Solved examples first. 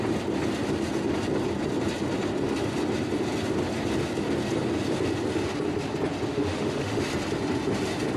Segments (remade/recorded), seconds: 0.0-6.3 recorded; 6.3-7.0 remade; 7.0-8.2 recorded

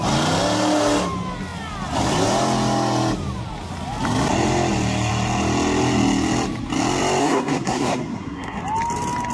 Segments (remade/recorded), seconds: 0.0-7.2 recorded; 7.2-8.6 remade; 8.6-9.3 recorded

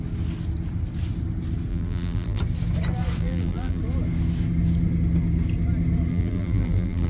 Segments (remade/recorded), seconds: 0.0-1.7 recorded; 1.7-2.4 remade; 2.4-3.2 recorded; 3.2-3.8 remade; 3.8-6.1 recorded; 6.1-7.1 remade

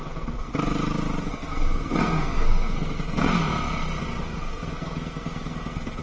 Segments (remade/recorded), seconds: 0.0-0.5 remade; 0.5-1.3 recorded; 1.3-3.4 remade; 3.4-4.2 recorded; 4.2-6.0 remade

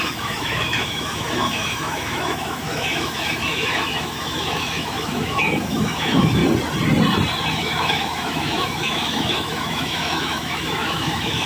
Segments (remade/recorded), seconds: 0.0-6.4 remade; 6.4-7.5 recorded; 7.5-11.5 remade

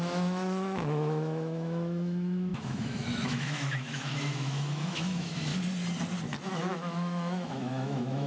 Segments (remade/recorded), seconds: 0.0-5.5 remade; 5.5-6.4 recorded; 6.4-8.3 remade

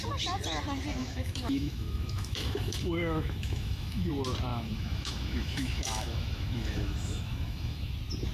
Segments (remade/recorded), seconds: 0.0-1.0 recorded; 1.0-4.1 remade; 4.1-4.5 recorded; 4.5-7.9 remade; 7.9-8.3 recorded